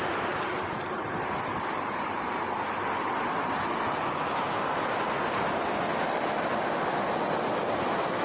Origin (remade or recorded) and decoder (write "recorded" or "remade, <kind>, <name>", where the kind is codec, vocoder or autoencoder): recorded